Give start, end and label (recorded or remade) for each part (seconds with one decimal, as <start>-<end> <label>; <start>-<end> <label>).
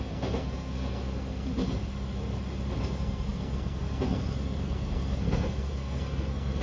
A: 0.0-1.5 remade; 1.5-2.8 recorded; 2.8-6.6 remade